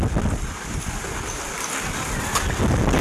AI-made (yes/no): no